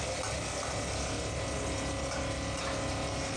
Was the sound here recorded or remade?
recorded